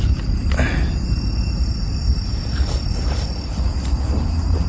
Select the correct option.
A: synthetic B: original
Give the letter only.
B